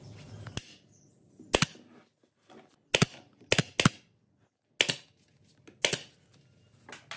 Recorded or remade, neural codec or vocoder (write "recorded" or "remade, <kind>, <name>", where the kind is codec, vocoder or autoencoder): recorded